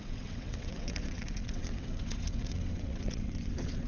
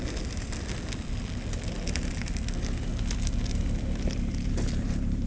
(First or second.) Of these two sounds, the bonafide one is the second